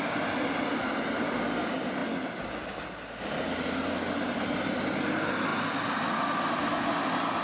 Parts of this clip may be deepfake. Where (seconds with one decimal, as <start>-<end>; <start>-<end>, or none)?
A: none